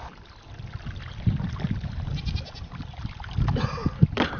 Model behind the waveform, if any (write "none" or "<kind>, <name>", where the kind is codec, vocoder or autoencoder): none